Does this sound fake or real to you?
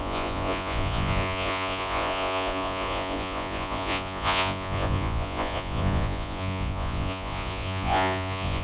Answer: fake